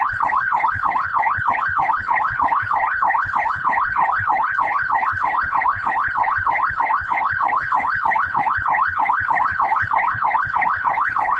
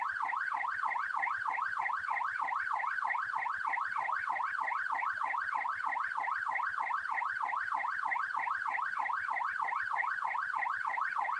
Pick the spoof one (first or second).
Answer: first